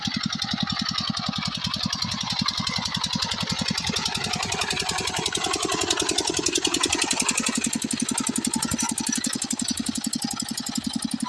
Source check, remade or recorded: recorded